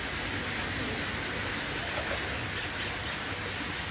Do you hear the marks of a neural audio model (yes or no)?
no